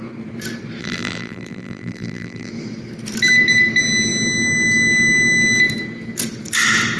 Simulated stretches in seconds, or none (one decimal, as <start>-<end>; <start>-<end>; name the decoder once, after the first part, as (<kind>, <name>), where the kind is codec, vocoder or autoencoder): 0.8-2.5 (vocoder, BigVGAN v2)